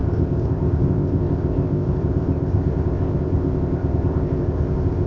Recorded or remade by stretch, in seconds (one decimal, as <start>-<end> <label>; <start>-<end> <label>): 0.0-5.1 remade